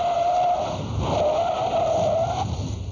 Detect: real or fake real